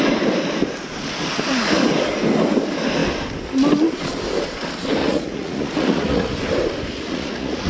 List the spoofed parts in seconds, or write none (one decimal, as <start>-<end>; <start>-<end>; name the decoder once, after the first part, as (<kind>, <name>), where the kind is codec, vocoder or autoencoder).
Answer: 5.0-6.3 (vocoder, Vocos); 6.9-7.7